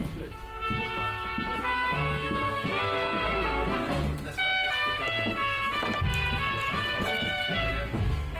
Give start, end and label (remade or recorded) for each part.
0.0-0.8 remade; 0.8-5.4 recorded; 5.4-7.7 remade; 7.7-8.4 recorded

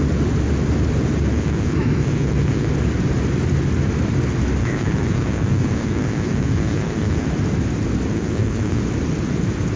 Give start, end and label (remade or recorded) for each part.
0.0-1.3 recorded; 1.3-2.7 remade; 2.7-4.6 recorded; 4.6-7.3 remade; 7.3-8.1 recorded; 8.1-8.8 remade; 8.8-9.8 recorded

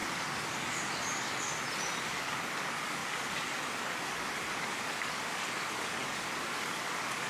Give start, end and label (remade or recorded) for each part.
0.0-1.5 remade; 1.5-2.1 recorded; 2.1-7.3 remade

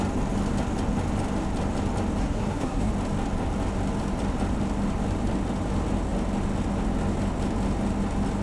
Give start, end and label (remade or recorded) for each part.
0.0-2.2 recorded; 2.2-2.9 remade; 2.9-8.4 recorded

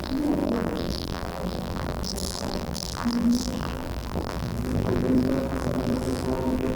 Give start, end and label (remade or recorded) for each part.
0.0-6.8 remade

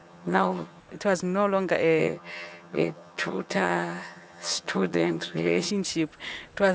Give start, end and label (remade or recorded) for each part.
0.0-0.8 remade; 0.8-2.0 recorded; 2.0-5.7 remade; 5.7-6.7 recorded

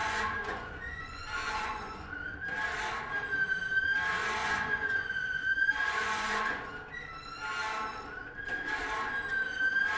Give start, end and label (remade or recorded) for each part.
0.0-2.1 remade; 2.1-4.4 recorded; 4.4-6.7 remade; 6.7-10.0 recorded

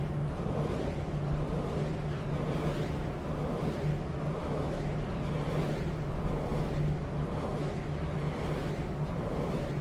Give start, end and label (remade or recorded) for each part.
0.0-4.4 recorded; 4.4-4.9 remade; 4.9-9.8 recorded